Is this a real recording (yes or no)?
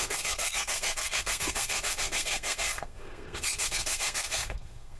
no